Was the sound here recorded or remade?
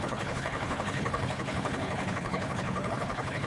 remade